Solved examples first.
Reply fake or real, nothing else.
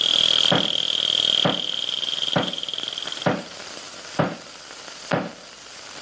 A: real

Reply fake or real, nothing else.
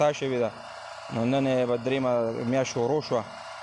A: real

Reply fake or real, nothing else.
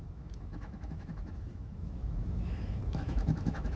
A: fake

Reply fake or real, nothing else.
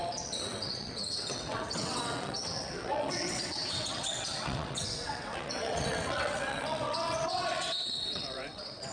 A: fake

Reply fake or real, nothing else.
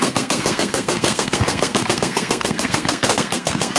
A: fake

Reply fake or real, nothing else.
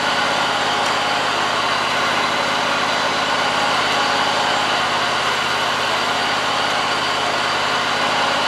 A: real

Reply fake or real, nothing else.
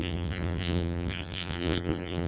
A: fake